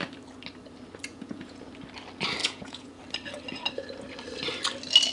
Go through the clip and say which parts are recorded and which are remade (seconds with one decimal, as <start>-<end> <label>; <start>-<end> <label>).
0.0-1.1 recorded; 1.1-1.7 remade; 1.7-2.4 recorded; 2.4-3.0 remade; 3.0-5.1 recorded